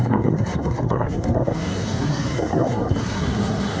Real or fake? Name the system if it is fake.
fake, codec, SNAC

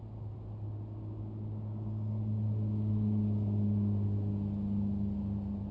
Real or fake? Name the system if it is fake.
real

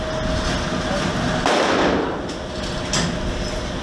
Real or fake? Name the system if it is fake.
real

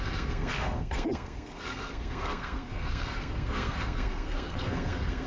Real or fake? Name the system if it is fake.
fake, codec, SNAC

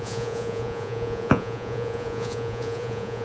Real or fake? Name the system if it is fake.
fake, vocoder, Vocos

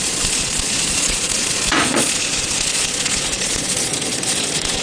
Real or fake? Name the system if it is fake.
fake, vocoder, Vocos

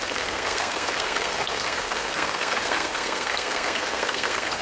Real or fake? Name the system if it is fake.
fake, codec, SNAC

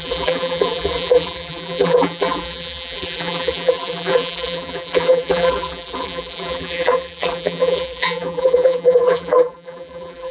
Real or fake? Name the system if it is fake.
fake, vocoder, BigVGAN v2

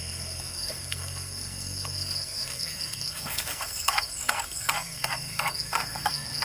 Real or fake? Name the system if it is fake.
fake, codec, SNAC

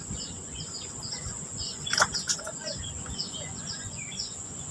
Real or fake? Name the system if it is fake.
fake, vocoder, Vocos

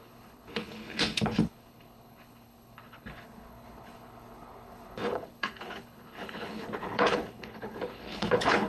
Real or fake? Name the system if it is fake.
fake, codec, HILCodec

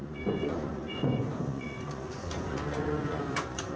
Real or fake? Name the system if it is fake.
fake, vocoder, Vocos